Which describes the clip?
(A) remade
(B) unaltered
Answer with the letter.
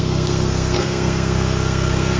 A